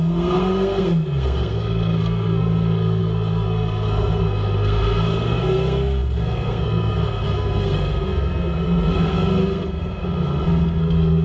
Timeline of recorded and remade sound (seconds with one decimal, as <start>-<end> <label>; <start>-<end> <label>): 0.0-11.2 remade